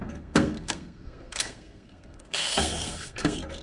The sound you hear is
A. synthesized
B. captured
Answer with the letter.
A